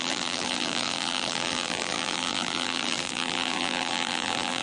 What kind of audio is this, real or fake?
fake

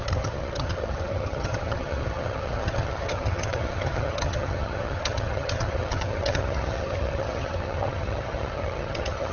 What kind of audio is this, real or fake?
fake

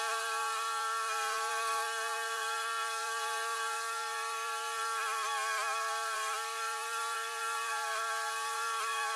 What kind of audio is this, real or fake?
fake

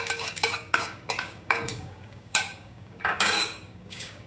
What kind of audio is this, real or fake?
fake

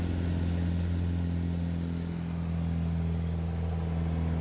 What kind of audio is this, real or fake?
real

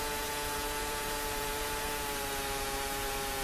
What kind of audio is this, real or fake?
fake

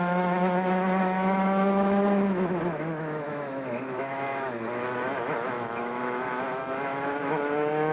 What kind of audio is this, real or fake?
fake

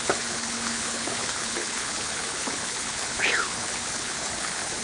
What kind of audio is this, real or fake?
fake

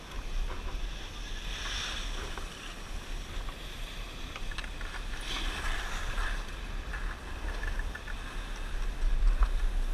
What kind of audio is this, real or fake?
real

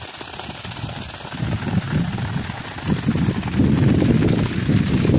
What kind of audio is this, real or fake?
real